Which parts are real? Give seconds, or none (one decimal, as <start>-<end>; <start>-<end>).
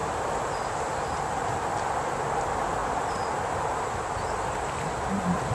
1.2-5.5